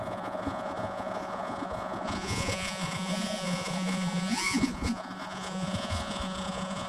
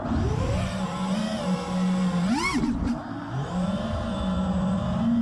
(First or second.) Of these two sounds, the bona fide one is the second